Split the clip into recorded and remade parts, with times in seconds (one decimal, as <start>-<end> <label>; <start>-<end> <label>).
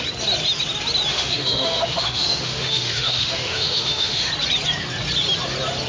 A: 0.0-1.1 recorded; 1.1-4.3 remade; 4.3-5.9 recorded